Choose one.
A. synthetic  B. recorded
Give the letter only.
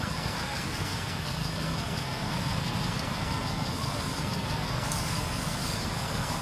A